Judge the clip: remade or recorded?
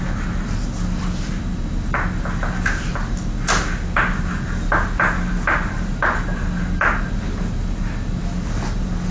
recorded